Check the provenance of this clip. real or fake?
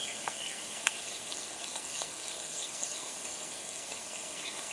fake